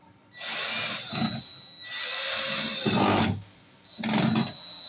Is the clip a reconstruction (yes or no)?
no